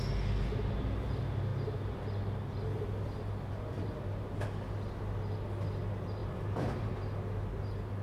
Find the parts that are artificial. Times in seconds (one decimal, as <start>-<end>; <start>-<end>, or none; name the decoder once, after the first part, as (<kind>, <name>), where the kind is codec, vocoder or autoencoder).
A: 6.2-6.9 (vocoder, BigVGAN v2)